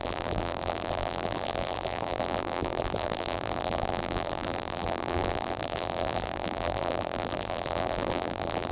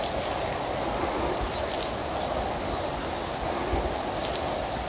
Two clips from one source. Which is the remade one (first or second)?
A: first